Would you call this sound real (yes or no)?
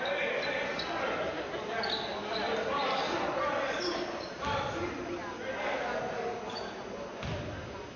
yes